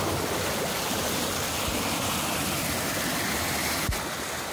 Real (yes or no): yes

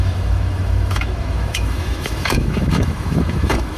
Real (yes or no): no